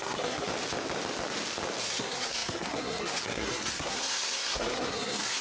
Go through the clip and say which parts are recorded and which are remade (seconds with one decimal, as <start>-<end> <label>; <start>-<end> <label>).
0.0-0.5 remade; 0.5-1.8 recorded; 1.8-5.4 remade